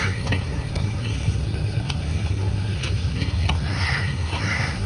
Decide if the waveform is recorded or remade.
remade